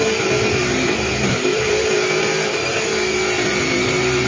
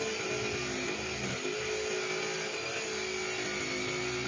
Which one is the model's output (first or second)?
first